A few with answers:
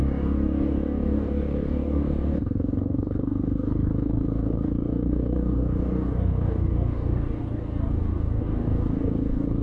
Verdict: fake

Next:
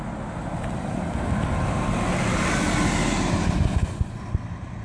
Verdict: real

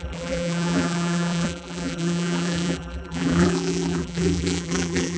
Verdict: fake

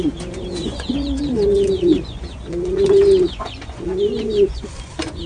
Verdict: fake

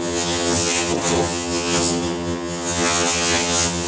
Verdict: fake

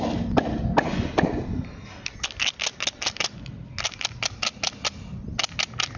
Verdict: real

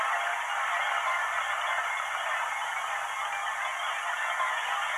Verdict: real